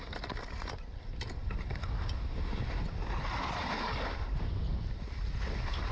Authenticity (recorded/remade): recorded